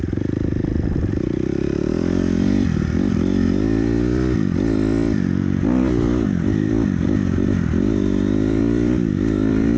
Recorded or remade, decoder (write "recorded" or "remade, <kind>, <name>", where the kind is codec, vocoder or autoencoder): remade, vocoder, BigVGAN v2